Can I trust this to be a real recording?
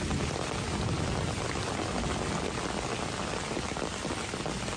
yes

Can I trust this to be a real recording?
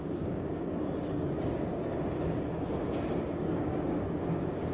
no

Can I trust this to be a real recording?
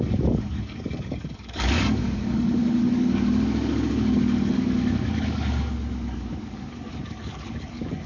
no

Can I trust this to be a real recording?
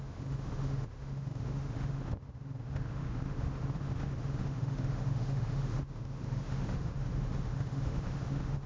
no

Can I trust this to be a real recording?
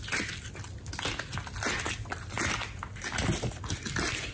yes